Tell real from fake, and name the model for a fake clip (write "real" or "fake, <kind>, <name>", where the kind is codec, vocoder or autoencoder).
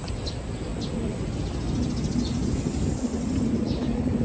real